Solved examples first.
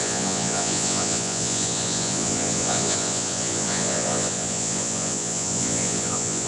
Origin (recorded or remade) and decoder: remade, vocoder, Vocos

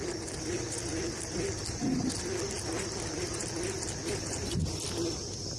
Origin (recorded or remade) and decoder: recorded